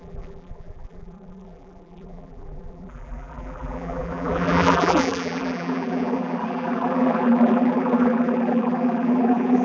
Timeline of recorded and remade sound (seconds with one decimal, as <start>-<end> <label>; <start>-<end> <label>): 0.0-9.6 remade